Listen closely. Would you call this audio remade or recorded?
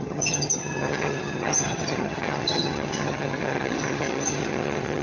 remade